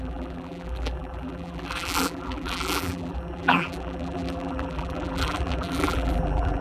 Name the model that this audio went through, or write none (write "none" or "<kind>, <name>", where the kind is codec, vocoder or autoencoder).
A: vocoder, BigVGAN v2